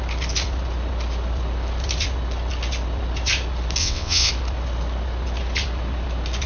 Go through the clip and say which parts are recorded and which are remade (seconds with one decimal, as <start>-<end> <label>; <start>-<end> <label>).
0.0-3.8 recorded; 3.8-4.3 remade; 4.3-6.5 recorded